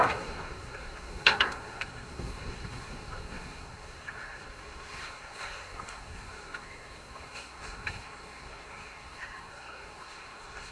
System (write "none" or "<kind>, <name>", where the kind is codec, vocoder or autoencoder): codec, SNAC